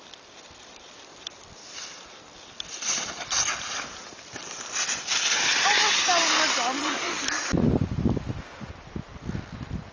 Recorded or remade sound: recorded